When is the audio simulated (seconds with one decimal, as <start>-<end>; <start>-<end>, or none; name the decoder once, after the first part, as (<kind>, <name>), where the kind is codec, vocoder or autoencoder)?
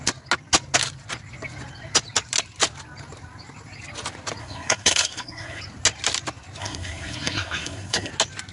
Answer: 4.4-5.6 (codec, SNAC); 6.6-8.1